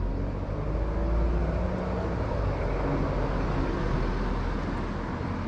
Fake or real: real